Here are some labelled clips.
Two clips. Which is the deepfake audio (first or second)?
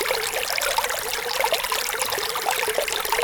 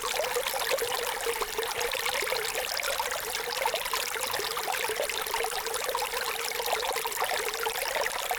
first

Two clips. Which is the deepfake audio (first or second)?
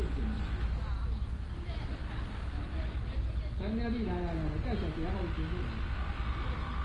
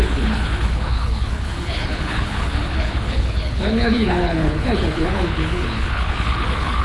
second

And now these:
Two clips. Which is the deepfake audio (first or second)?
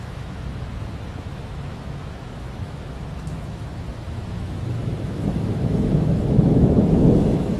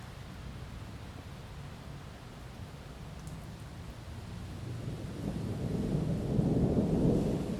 first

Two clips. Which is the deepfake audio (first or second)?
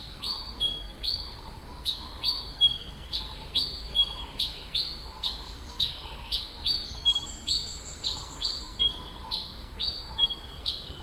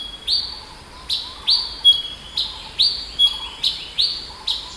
first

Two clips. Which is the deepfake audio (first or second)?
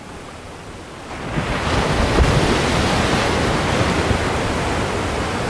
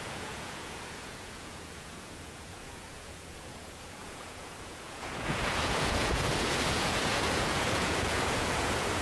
second